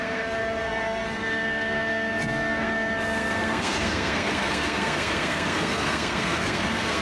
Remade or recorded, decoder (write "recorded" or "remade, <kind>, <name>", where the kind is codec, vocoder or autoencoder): remade, codec, SNAC